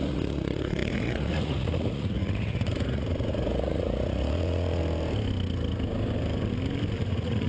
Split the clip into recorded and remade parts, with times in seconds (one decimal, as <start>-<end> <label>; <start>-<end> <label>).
0.0-4.8 remade; 4.8-7.1 recorded; 7.1-7.5 remade